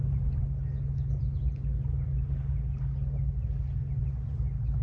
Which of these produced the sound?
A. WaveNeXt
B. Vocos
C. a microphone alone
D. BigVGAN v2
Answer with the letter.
C